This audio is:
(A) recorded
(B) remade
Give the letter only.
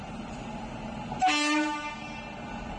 A